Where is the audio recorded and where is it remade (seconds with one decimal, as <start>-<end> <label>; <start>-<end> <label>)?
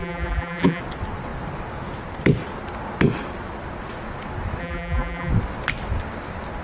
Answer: 0.0-0.8 remade; 0.8-4.6 recorded; 4.6-5.3 remade; 5.3-6.6 recorded